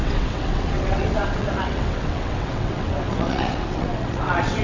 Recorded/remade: remade